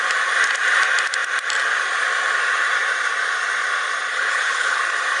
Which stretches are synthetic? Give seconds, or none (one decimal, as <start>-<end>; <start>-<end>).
4.1-4.8